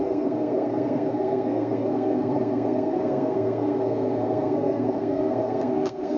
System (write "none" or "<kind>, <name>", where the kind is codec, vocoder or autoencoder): codec, SNAC